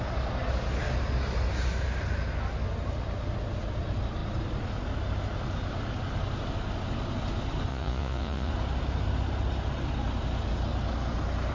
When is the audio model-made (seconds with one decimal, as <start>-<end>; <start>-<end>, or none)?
7.7-8.5